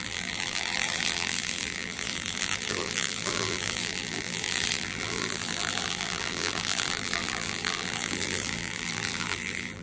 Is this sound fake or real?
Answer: fake